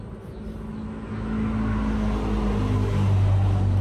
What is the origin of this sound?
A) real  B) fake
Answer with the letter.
A